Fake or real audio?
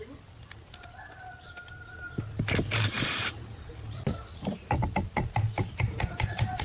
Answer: real